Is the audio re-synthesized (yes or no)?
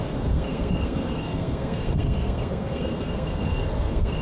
yes